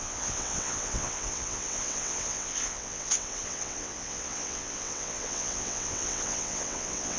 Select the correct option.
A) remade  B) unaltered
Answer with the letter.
A